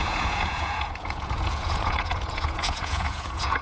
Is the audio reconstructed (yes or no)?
yes